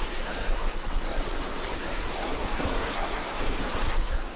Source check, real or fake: fake